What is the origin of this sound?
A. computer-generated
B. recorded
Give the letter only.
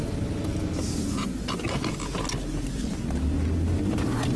B